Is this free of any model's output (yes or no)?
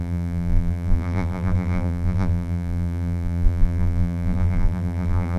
no